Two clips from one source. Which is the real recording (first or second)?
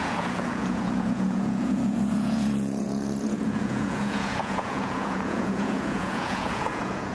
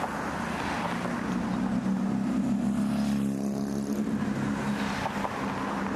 second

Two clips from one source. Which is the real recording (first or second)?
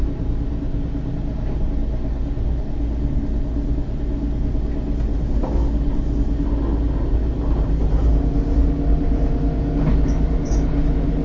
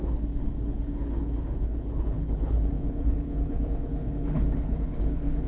first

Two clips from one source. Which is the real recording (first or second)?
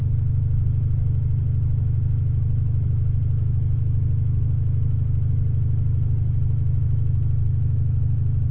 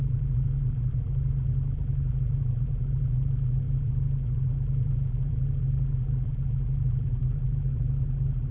first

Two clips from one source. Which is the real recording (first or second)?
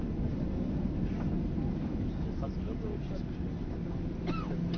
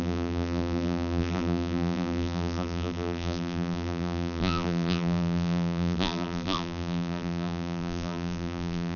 first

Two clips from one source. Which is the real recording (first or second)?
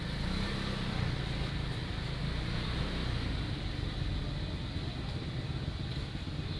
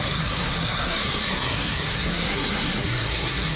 first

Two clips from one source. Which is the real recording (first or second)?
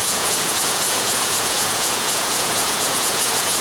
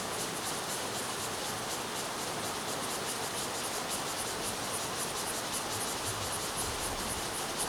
second